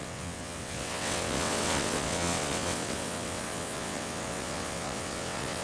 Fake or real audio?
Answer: fake